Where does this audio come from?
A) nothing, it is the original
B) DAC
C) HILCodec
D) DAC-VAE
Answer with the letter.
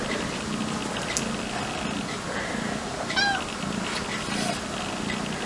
A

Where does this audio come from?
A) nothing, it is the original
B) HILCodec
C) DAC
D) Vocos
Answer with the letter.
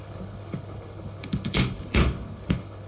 B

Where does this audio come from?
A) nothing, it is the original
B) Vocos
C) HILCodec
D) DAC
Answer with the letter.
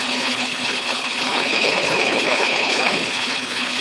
C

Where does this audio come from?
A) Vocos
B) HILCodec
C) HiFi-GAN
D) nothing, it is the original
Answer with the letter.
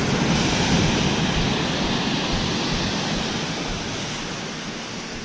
D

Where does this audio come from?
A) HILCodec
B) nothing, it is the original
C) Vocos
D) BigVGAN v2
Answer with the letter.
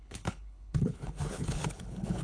A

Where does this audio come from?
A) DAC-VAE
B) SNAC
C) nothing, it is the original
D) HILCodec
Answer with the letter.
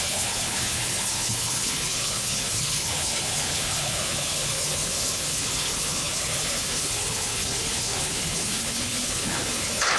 D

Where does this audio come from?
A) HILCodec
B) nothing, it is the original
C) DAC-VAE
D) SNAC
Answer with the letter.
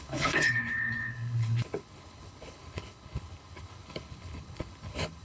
A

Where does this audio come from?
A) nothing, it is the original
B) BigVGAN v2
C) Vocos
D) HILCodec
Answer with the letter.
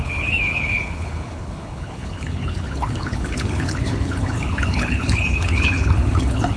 D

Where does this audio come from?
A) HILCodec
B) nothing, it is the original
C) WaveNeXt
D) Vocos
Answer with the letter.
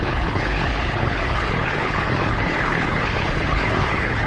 A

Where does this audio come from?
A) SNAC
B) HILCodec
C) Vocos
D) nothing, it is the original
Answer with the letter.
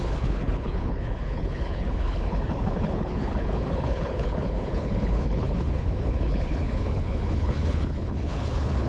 B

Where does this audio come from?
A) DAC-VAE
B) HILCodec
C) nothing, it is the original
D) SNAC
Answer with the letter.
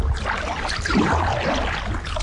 C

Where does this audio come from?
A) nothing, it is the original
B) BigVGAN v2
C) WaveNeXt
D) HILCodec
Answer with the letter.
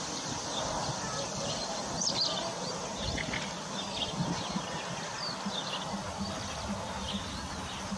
A